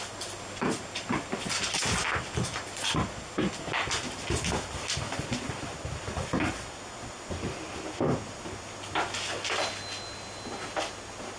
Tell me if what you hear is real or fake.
real